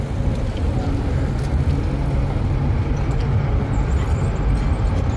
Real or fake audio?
real